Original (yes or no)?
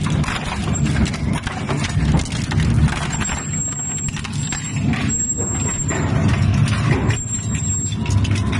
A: yes